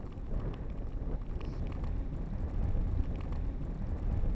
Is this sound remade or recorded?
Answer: recorded